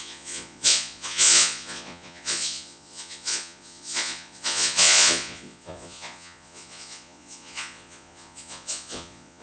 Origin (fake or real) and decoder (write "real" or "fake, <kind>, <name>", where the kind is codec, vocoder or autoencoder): fake, vocoder, Vocos